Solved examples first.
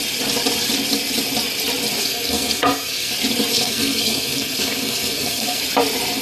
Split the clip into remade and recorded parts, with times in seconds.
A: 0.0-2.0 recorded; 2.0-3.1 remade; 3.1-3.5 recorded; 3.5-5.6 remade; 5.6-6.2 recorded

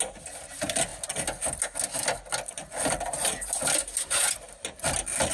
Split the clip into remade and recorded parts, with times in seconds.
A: 0.0-5.3 recorded

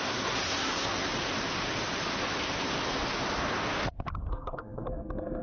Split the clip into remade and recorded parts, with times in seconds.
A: 0.0-1.1 remade; 1.1-4.3 recorded; 4.3-5.4 remade

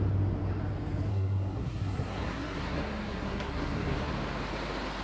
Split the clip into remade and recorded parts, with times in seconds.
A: 0.0-1.1 recorded; 1.1-4.1 remade; 4.1-5.0 recorded

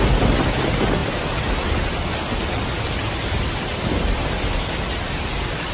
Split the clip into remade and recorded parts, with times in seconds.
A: 0.0-5.7 recorded

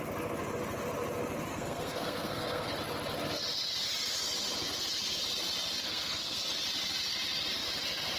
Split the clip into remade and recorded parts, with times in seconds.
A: 0.0-1.5 recorded; 1.5-2.7 remade; 2.7-5.8 recorded; 5.8-6.4 remade; 6.4-8.2 recorded